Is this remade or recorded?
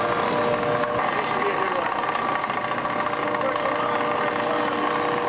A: recorded